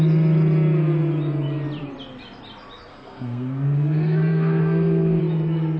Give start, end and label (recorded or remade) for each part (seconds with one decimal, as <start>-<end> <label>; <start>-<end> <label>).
0.0-2.9 recorded; 2.9-5.2 remade; 5.2-5.8 recorded